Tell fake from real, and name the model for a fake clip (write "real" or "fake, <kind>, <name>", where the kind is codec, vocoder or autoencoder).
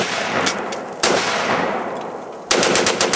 real